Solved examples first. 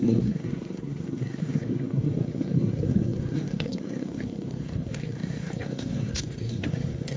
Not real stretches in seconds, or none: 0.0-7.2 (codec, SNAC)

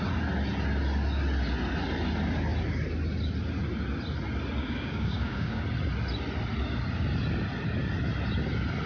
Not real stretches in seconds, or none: 4.6-5.6 (codec, DAC)

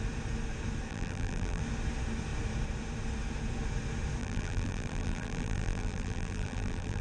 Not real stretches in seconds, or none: 0.9-1.6 (vocoder, BigVGAN v2); 4.2-7.0

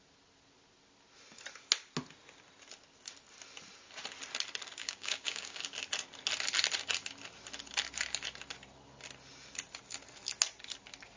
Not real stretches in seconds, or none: 4.8-5.6 (codec, DAC)

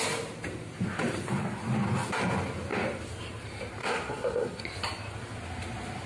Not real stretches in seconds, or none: 3.8-4.6 (codec, SNAC)

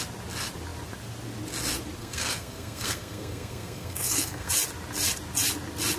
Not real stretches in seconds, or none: 2.0-4.5 (codec, SNAC)

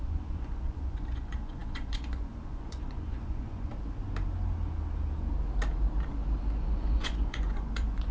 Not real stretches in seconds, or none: 0.0-3.7 (vocoder, Vocos); 6.5-8.1